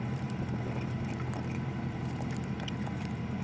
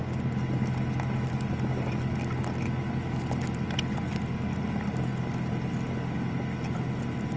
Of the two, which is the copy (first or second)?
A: first